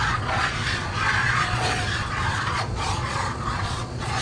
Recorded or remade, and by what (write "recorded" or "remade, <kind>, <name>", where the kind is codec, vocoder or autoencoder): remade, vocoder, Vocos